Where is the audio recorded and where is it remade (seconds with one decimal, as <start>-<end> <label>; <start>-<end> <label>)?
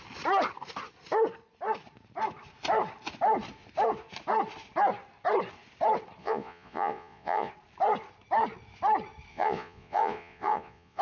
0.0-6.2 recorded; 6.2-7.5 remade; 7.5-9.3 recorded; 9.3-11.0 remade